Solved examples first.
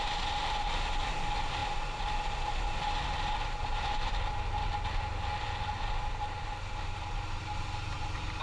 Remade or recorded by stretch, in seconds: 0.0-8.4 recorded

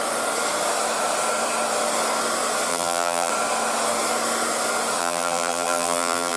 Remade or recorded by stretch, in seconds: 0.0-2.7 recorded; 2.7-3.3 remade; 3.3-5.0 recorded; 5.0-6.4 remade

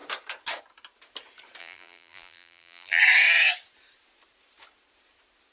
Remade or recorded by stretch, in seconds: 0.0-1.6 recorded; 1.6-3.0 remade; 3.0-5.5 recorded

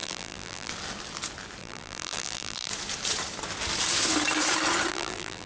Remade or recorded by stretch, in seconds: 0.0-0.7 remade; 0.7-1.6 recorded; 1.6-2.7 remade; 2.7-4.9 recorded; 4.9-5.5 remade

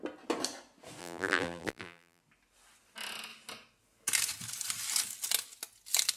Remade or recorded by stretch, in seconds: 0.0-1.0 recorded; 1.0-2.2 remade; 2.2-6.2 recorded

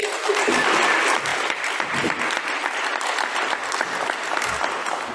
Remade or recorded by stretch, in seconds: 0.0-0.9 remade; 0.9-1.3 recorded; 1.3-2.2 remade; 2.2-2.9 recorded; 2.9-3.8 remade; 3.8-5.1 recorded

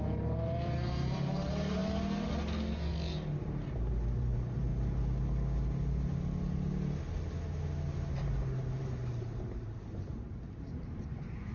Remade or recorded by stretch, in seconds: 0.0-1.8 remade; 1.8-4.2 recorded; 4.2-4.7 remade; 4.7-8.1 recorded; 8.1-11.5 remade